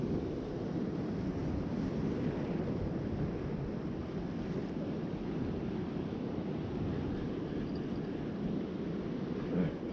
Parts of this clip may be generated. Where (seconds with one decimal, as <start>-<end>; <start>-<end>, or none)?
none